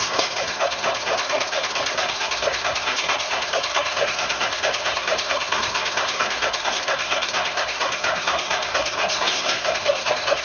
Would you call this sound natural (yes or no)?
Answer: no